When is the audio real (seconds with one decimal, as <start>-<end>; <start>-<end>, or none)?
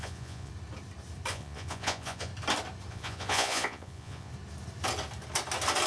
0.5-1.3; 2.3-2.9; 4.3-5.9